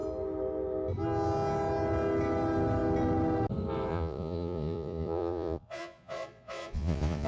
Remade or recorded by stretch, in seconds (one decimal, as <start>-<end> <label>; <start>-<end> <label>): 0.0-3.9 recorded; 3.9-7.3 remade

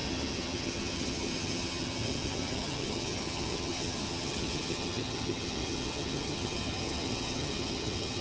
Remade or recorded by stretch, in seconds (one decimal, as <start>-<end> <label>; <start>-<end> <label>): 0.0-8.2 remade